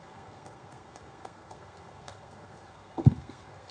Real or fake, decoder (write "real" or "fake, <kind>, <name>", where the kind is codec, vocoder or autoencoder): fake, codec, SNAC